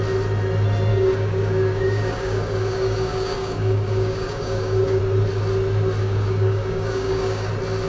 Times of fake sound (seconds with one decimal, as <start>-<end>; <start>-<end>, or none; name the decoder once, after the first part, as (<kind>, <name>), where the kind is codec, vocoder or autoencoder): 0.9-5.0 (codec, DAC); 6.0-7.5